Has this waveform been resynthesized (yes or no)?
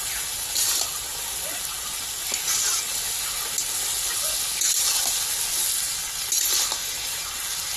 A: no